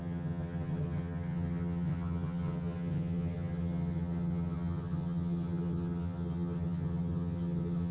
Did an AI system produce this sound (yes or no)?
yes